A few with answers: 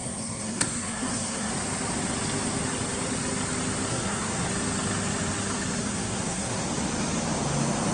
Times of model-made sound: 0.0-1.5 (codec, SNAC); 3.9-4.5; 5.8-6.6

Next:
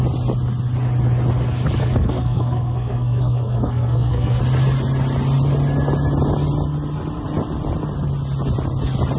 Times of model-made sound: 1.8-4.4 (codec, SNAC)

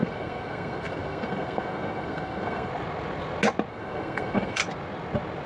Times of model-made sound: 0.0-2.7 (codec, SNAC); 3.7-4.6

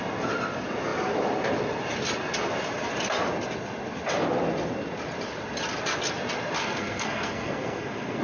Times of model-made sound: 6.6-8.2 (codec, SNAC)

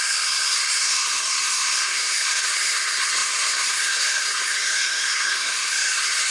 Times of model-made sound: 0.0-6.3 (codec, SNAC)